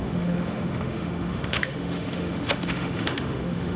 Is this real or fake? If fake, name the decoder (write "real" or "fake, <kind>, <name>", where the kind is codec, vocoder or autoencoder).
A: fake, autoencoder, DAC-VAE